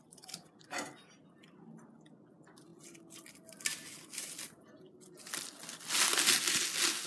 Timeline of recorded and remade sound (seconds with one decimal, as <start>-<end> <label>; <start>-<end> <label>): 0.0-7.1 recorded